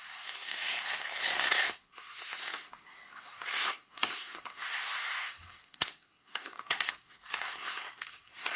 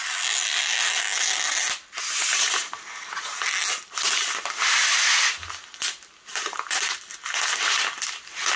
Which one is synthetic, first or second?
first